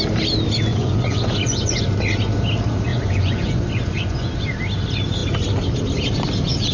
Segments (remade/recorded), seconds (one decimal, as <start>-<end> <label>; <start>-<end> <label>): 0.0-0.7 recorded; 0.7-1.8 remade; 1.8-2.9 recorded; 2.9-4.3 remade; 4.3-6.7 recorded